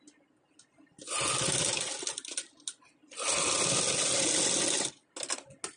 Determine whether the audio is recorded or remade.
recorded